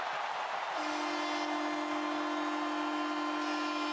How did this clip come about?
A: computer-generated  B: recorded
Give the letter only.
B